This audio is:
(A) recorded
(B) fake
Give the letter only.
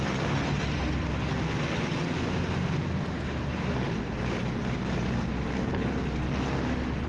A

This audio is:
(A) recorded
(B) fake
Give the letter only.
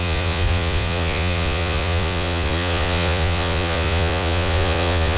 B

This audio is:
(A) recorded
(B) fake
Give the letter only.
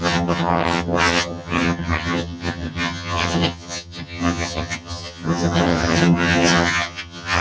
B